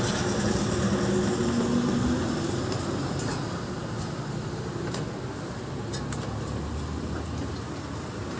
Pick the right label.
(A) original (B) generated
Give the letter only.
A